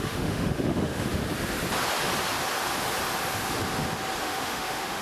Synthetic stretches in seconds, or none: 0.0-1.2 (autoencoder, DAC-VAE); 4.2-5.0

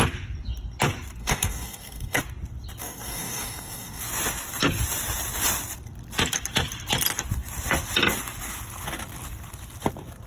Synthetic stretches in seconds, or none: 1.2-2.2 (codec, DAC); 2.8-4.0

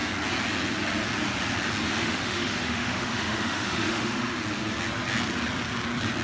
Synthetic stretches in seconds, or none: 2.0-4.3 (autoencoder, DAC-VAE)

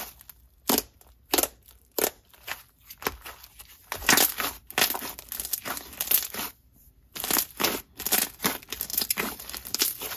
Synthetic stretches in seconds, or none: 3.9-4.8 (vocoder, BigVGAN v2); 8.9-10.2

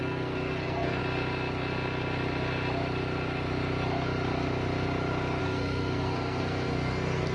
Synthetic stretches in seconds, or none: 0.0-1.0 (codec, SNAC); 5.4-7.3

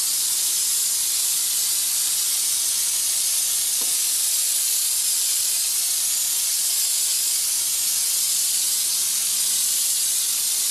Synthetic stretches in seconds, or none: none

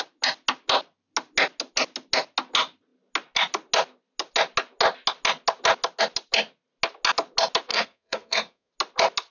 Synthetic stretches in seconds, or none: 7.7-8.7 (codec, SNAC)

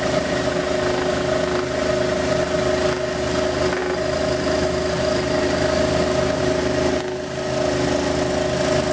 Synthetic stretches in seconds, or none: none